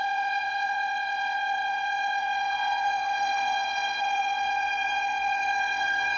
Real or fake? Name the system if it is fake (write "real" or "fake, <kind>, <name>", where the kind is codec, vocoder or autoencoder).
fake, vocoder, WaveNeXt